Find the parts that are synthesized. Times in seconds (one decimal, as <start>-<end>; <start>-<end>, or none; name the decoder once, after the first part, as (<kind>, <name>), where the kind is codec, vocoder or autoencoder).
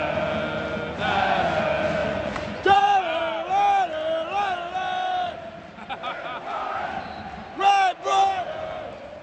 2.0-3.2 (vocoder, Vocos)